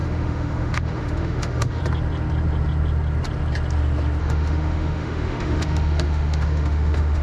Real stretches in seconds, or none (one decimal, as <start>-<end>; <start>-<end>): 1.8-4.2